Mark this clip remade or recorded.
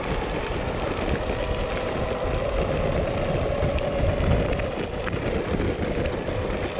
recorded